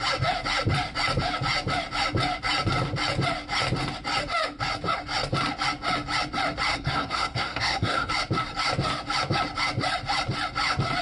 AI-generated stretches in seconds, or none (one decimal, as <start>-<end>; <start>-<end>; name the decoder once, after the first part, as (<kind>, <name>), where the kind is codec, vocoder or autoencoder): 6.7-8.1 (codec, SNAC)